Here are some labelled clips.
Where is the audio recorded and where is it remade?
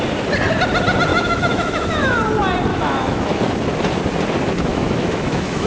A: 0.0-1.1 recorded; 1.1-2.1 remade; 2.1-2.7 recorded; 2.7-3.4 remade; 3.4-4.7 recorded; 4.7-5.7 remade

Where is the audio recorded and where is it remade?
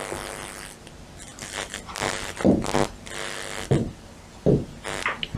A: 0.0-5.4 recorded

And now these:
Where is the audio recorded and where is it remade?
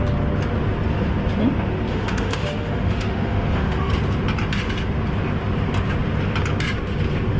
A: 0.0-1.9 recorded; 1.9-3.9 remade; 3.9-7.4 recorded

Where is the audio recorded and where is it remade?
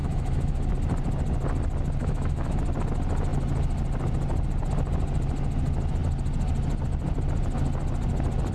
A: 0.0-0.7 remade; 0.7-2.0 recorded; 2.0-2.6 remade; 2.6-8.5 recorded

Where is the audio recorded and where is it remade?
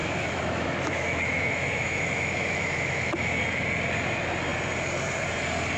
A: 0.0-3.4 remade; 3.4-5.8 recorded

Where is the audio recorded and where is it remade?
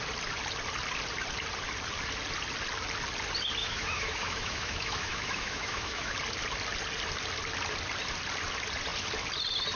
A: 0.0-3.6 recorded; 3.6-6.1 remade; 6.1-9.8 recorded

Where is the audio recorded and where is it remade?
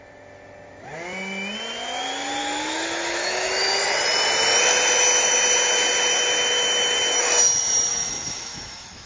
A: 0.0-2.4 recorded; 2.4-3.5 remade; 3.5-7.9 recorded; 7.9-9.1 remade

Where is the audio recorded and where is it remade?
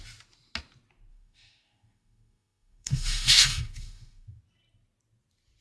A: 0.0-1.1 recorded; 1.1-4.4 remade; 4.4-5.6 recorded